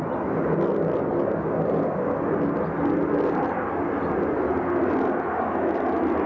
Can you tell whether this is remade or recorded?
recorded